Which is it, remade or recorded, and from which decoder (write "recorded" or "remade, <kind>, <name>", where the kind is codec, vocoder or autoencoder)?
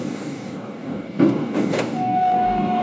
remade, codec, DAC